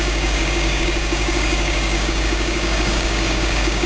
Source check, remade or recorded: remade